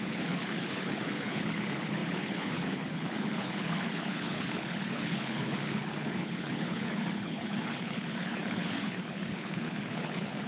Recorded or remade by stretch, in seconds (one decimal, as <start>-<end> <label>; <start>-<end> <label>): 0.0-10.5 remade